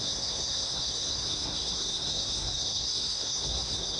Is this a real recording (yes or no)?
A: no